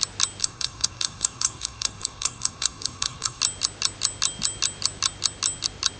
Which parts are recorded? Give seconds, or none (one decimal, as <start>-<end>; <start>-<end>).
0.0-0.4; 3.4-6.0